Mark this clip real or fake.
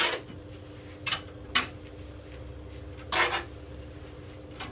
real